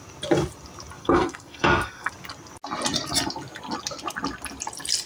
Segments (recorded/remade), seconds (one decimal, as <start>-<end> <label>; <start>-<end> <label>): 0.0-1.0 recorded; 1.0-2.1 remade; 2.1-5.1 recorded